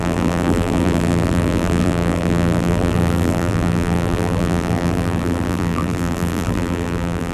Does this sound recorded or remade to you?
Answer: remade